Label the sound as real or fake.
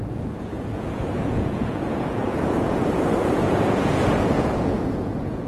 fake